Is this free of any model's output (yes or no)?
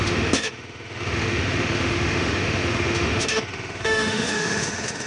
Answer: no